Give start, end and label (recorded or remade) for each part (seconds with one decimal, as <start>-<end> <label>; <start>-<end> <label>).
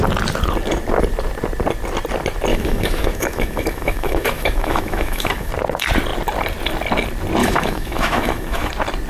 0.0-2.5 recorded; 2.5-5.5 remade; 5.5-7.4 recorded; 7.4-8.7 remade; 8.7-9.1 recorded